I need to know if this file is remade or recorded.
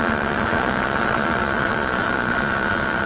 remade